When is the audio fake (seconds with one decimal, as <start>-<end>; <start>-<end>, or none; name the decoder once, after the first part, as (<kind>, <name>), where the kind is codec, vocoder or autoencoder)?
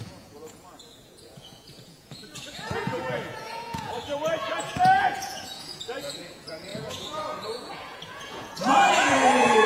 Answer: 0.0-9.7 (vocoder, Vocos)